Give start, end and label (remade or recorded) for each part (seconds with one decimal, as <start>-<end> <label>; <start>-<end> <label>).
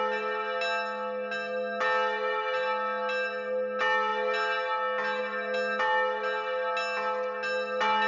0.0-8.1 recorded